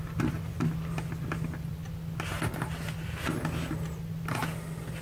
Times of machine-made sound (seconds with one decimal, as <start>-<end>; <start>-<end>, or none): none